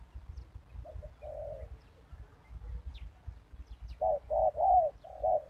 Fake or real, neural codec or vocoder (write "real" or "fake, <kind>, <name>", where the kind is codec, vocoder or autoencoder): real